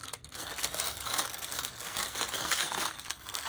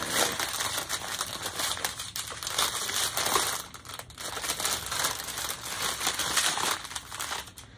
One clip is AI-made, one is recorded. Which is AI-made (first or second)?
first